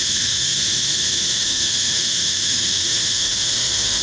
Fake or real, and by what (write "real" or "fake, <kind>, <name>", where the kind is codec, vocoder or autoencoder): fake, autoencoder, DAC-VAE